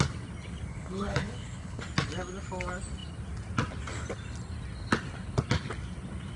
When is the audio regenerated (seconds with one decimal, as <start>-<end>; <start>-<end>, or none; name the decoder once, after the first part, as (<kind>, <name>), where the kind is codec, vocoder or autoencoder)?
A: 0.7-1.8 (codec, HILCodec)